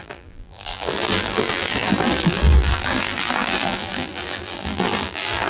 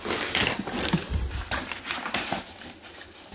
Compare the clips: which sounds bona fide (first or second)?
second